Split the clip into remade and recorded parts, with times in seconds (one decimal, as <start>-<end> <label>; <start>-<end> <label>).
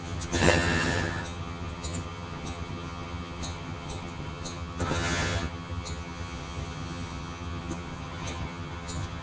0.0-9.2 remade